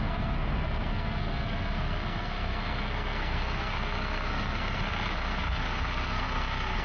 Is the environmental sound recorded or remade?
remade